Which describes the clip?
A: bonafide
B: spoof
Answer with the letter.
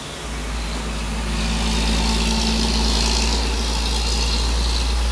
A